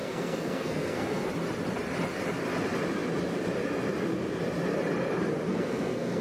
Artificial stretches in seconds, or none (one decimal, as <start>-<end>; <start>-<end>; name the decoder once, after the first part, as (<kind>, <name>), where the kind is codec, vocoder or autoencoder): 0.0-1.3 (codec, SNAC); 5.5-6.2